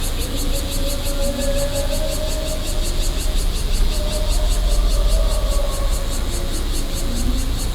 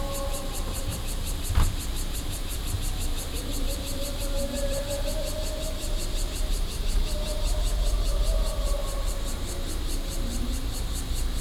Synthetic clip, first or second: second